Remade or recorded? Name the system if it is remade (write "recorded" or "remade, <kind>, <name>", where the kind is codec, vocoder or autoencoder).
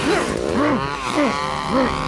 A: recorded